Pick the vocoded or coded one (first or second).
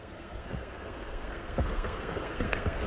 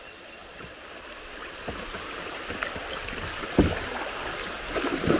first